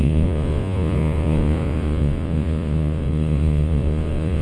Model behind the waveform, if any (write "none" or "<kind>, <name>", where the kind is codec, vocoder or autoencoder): vocoder, Vocos